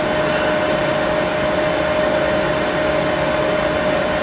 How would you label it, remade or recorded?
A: recorded